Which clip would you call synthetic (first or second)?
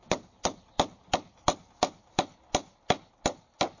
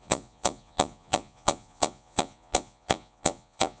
second